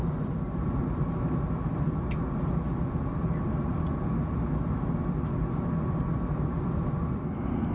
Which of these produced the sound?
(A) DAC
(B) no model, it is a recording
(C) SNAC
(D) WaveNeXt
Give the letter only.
B